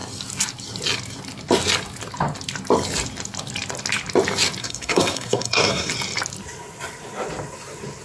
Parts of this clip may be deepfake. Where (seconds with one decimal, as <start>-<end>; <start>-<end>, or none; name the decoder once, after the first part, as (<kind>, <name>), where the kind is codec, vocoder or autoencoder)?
4.6-5.9 (codec, SNAC)